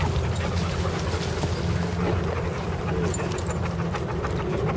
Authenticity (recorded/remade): recorded